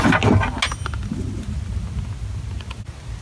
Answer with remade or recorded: recorded